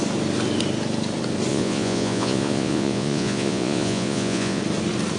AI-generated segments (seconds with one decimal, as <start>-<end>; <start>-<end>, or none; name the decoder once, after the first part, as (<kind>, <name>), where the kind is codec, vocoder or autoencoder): 1.5-4.6 (vocoder, Vocos)